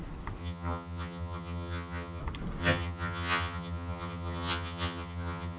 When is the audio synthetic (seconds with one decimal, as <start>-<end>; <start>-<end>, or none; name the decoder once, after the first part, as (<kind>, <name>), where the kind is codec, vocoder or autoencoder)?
0.4-2.2 (vocoder, HiFi-GAN); 2.6-5.6